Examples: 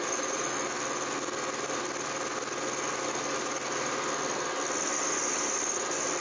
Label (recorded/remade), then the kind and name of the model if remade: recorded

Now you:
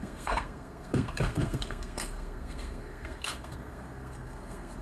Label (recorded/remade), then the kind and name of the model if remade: remade, codec, SNAC